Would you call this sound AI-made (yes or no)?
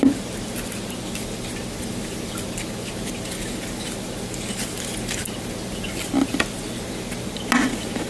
no